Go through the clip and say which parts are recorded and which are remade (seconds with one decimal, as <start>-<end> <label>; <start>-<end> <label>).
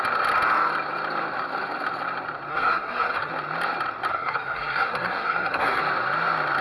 0.0-2.5 recorded; 2.5-3.3 remade; 3.3-4.1 recorded; 4.1-5.8 remade; 5.8-6.6 recorded